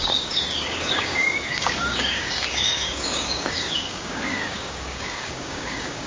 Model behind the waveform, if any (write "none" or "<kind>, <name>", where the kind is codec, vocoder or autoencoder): codec, DAC